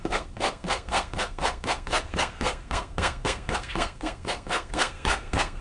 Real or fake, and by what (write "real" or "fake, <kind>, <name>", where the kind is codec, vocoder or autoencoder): fake, codec, SNAC